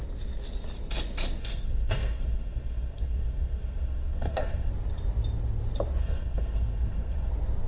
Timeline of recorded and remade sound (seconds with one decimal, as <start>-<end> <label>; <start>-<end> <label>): 0.0-1.4 recorded; 1.4-4.7 remade; 4.7-6.0 recorded; 6.0-7.3 remade; 7.3-7.7 recorded